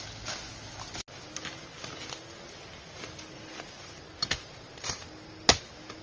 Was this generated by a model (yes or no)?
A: no